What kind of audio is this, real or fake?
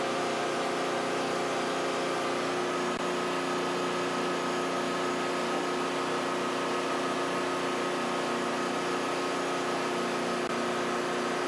real